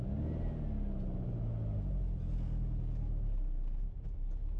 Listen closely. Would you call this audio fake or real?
real